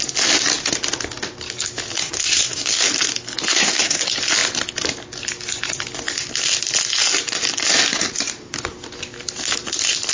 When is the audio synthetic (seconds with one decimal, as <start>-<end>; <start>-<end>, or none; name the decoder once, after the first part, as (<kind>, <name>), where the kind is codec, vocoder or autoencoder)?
2.0-2.8 (codec, SNAC); 3.5-4.0